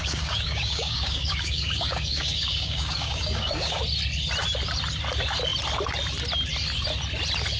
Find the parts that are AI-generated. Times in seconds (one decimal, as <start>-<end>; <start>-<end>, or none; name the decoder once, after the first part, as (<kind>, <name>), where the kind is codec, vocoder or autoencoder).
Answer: 0.0-3.8 (codec, DAC)